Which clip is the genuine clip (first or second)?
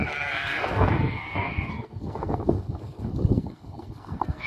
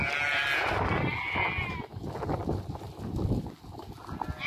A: second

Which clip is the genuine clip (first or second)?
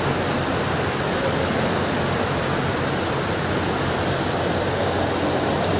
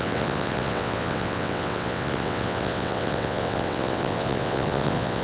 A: first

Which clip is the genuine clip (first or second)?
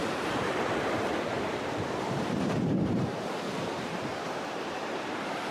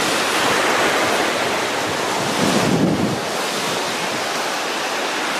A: second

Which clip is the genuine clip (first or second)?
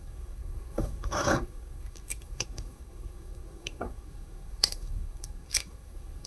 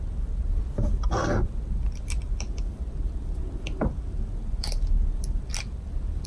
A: second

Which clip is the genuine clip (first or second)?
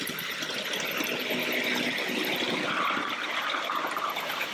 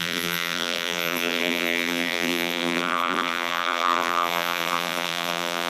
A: first